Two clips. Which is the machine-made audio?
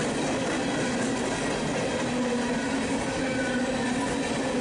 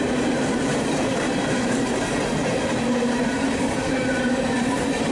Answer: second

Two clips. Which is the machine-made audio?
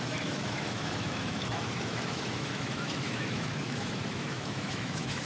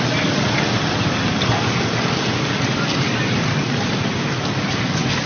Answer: first